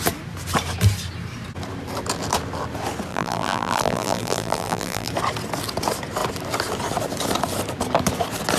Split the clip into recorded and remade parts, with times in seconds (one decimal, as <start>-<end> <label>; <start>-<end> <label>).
0.0-3.1 recorded; 3.1-5.1 remade; 5.1-8.6 recorded